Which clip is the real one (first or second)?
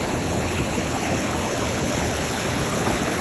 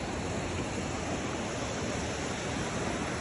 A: second